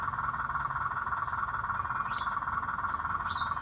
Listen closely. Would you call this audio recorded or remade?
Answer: recorded